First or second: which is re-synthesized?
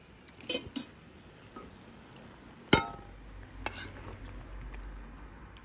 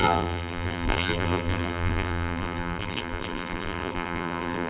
second